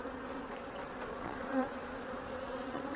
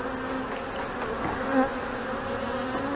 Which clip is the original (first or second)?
second